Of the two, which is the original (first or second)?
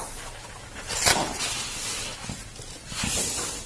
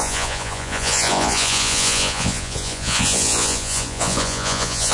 first